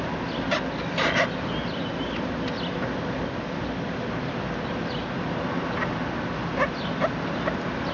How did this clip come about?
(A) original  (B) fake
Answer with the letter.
A